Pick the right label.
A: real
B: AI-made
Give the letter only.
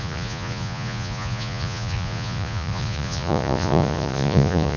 B